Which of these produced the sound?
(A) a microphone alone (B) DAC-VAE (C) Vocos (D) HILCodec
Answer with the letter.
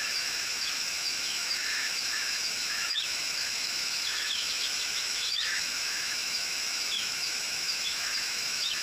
B